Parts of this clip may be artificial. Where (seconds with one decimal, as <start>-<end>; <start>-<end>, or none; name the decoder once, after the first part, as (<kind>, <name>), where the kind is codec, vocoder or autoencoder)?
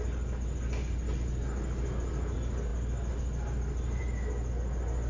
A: none